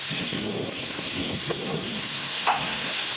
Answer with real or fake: fake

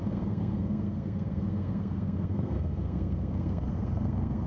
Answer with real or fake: fake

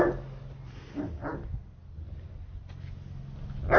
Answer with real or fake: real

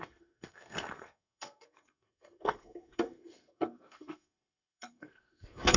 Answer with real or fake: fake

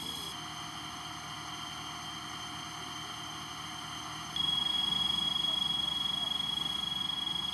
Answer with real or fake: real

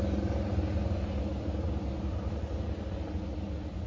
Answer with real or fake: real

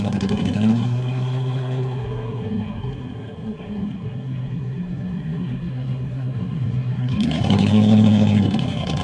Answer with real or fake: fake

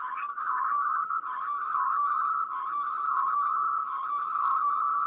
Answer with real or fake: real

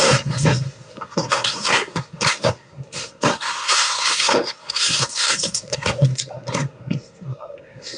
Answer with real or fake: fake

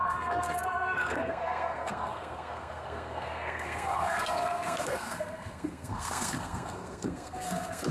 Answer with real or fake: fake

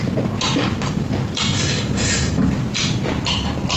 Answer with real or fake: real